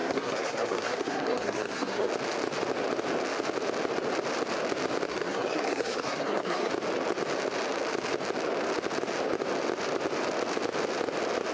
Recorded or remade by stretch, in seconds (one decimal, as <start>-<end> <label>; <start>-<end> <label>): 0.0-2.1 remade; 2.1-5.1 recorded; 5.1-6.7 remade; 6.7-11.5 recorded